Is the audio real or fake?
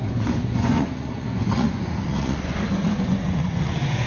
fake